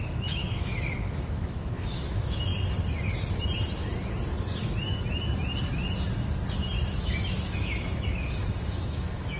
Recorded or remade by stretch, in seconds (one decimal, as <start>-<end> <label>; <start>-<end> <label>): 0.0-2.5 remade; 2.5-6.9 recorded; 6.9-9.4 remade